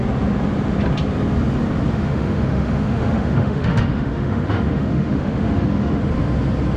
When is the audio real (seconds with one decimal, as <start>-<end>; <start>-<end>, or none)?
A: 0.0-2.0; 6.0-6.8